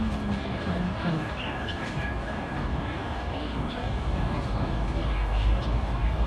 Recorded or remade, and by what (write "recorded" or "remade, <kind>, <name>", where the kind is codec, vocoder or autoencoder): remade, codec, DAC